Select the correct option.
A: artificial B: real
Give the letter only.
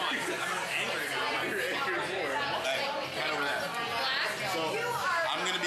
B